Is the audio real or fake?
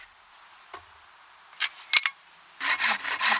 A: real